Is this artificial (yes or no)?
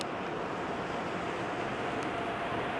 no